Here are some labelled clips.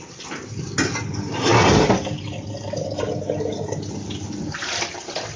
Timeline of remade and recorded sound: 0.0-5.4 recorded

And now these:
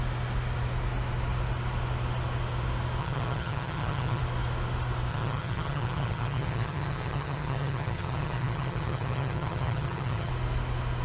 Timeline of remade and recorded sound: 0.0-3.0 recorded; 3.0-4.2 remade; 4.2-5.1 recorded; 5.1-10.3 remade; 10.3-11.0 recorded

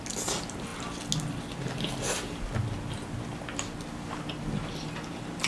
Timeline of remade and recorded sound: 0.0-5.5 recorded

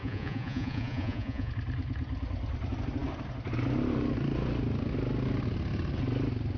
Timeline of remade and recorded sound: 0.0-1.5 remade; 1.5-6.6 recorded